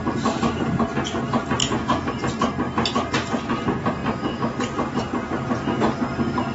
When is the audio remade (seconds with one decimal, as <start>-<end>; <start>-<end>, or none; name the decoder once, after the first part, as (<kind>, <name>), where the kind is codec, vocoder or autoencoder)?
1.6-2.1 (autoencoder, DAC-VAE)